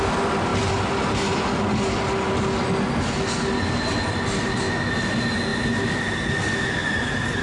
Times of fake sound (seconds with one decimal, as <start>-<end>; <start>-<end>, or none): none